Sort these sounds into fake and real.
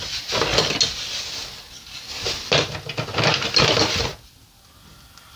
real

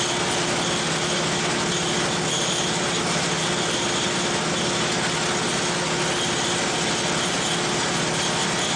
real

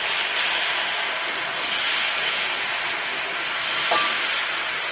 real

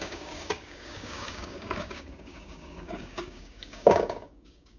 fake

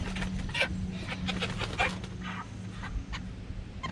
real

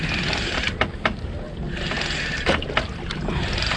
real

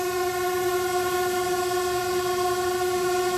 real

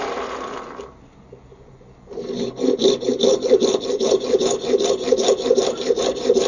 real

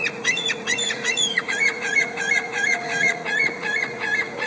fake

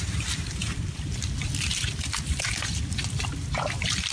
fake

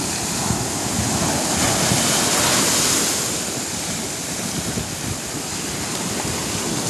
real